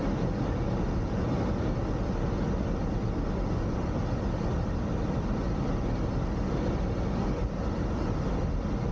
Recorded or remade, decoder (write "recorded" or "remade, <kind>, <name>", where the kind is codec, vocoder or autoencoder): recorded